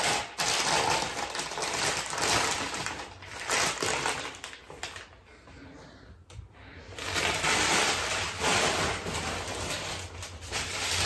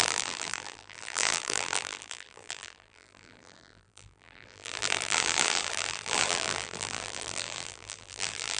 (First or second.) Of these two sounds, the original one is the first